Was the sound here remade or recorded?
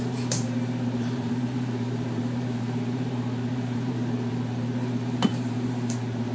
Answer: remade